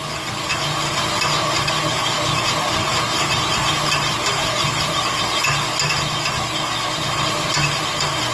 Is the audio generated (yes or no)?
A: no